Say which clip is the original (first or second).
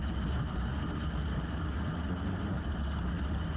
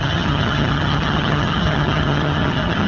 first